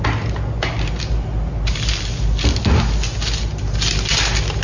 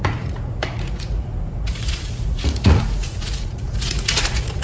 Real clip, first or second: first